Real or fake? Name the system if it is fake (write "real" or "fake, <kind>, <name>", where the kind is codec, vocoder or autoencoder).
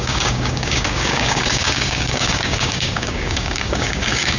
fake, codec, DAC